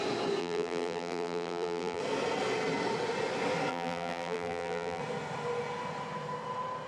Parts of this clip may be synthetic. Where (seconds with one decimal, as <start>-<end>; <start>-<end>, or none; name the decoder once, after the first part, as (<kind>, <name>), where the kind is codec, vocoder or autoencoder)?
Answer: 0.4-2.0 (vocoder, BigVGAN v2); 3.7-5.0